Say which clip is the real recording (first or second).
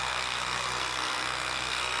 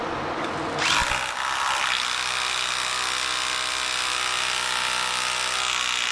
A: second